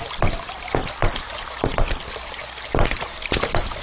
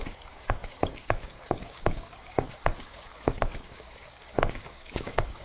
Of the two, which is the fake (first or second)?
second